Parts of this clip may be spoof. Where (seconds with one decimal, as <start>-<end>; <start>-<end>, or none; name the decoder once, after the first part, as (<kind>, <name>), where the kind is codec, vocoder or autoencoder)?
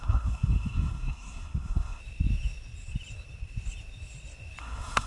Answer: 0.0-2.0 (codec, SNAC); 4.6-5.1